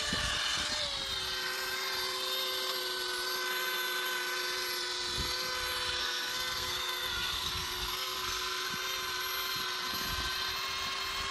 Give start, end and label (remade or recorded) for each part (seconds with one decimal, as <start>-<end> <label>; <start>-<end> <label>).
0.0-6.0 recorded; 6.0-8.7 remade; 8.7-11.3 recorded